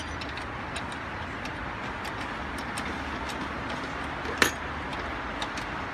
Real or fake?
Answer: real